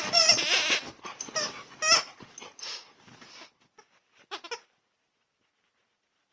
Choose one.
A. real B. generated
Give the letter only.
A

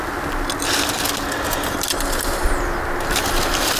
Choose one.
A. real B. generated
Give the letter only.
A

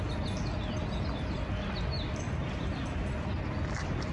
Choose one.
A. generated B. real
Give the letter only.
B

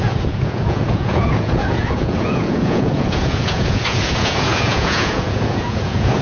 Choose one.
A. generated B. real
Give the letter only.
A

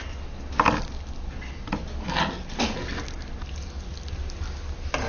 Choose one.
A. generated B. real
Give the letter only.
B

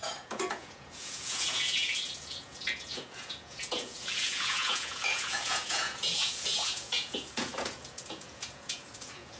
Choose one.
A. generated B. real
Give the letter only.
A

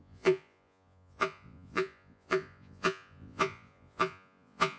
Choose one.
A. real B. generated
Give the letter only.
B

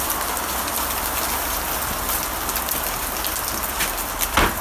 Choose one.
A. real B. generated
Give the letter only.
A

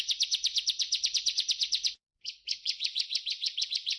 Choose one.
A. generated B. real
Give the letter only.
A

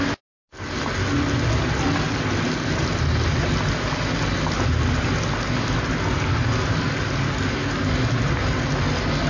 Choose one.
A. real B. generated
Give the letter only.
A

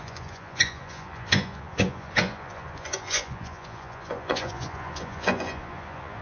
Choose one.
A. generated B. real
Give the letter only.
A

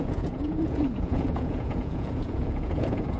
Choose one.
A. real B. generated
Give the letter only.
B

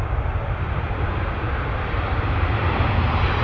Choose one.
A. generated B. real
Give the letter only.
B